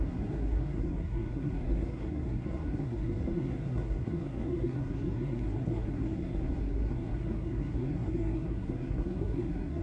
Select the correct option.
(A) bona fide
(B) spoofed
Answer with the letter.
B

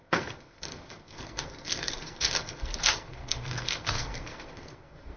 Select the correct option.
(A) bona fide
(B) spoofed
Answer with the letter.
B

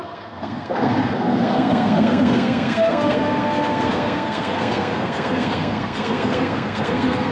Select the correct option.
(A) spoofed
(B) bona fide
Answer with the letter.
A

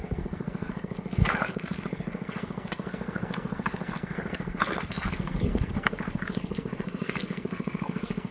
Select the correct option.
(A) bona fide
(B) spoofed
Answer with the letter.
B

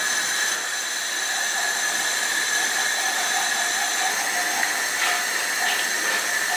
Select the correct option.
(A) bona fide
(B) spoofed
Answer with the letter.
A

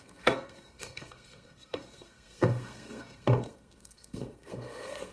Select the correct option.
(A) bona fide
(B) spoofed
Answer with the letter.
B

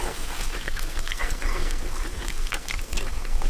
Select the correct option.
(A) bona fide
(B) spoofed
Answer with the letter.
B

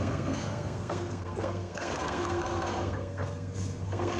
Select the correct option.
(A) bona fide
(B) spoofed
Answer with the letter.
B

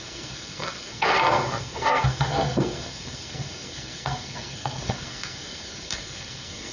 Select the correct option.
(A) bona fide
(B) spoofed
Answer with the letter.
B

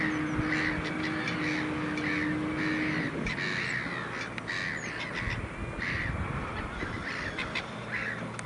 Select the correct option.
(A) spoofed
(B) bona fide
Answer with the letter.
B